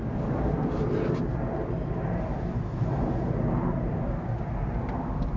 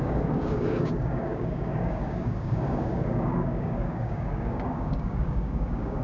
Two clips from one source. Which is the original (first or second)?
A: first